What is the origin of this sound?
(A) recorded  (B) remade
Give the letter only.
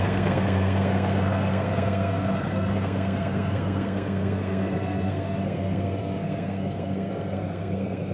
B